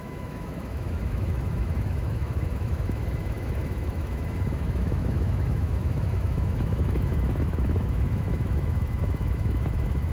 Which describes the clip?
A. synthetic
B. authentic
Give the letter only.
A